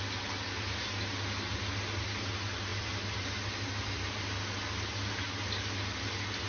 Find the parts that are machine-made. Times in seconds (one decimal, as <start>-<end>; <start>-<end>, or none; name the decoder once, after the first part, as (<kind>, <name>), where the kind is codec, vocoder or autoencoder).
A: none